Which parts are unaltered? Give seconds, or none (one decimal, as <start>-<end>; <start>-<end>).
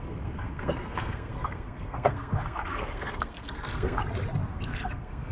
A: 4.0-4.5